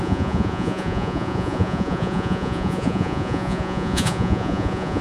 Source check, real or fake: fake